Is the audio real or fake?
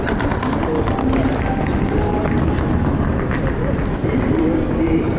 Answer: real